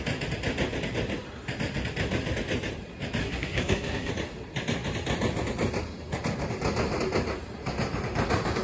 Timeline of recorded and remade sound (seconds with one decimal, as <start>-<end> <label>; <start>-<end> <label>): 0.0-3.2 recorded; 3.2-4.1 remade; 4.1-8.6 recorded